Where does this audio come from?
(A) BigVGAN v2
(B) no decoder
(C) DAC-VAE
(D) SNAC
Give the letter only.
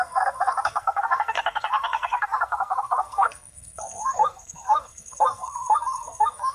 D